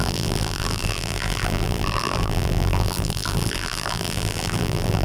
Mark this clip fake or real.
fake